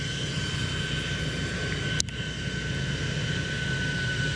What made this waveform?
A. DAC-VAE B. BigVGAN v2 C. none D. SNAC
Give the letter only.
C